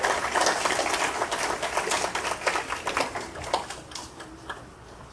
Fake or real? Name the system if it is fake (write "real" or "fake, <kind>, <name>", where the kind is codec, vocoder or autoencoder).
real